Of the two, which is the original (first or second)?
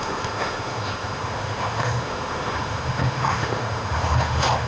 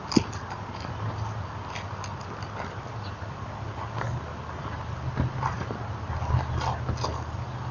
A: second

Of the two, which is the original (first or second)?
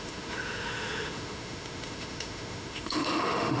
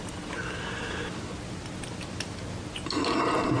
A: second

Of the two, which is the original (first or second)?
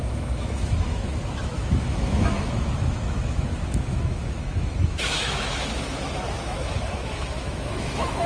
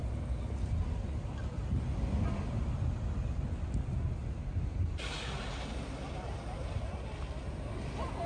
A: second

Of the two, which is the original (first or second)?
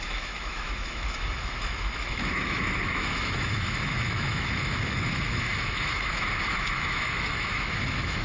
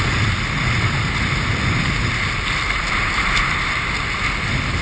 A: second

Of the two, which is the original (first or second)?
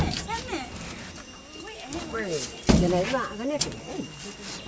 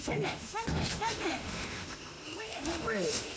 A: first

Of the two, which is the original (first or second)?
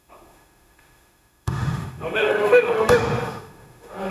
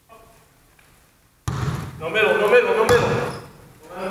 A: second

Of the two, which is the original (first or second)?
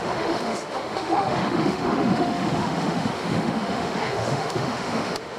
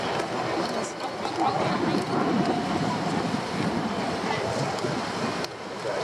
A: second